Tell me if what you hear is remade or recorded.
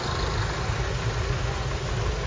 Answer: recorded